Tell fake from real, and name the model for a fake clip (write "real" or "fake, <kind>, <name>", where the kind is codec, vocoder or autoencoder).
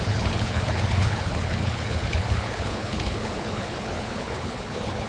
fake, codec, HILCodec